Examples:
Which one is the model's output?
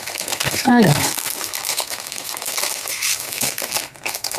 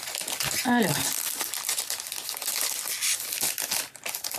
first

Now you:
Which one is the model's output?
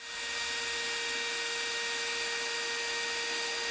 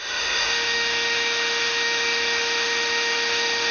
second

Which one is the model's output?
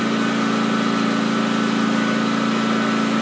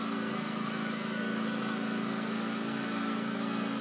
second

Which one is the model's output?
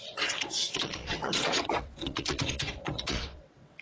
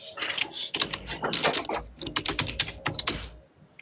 first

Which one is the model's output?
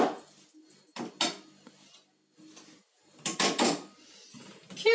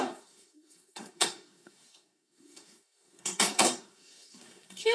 second